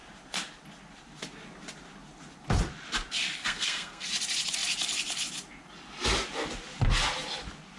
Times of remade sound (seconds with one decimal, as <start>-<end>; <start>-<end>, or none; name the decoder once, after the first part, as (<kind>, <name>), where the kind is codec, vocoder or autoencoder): 3.4-4.1 (codec, SNAC)